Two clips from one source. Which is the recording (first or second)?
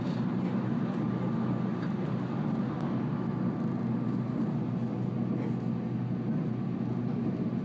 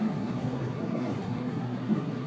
first